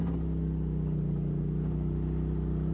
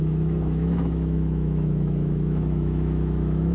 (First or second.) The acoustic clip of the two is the first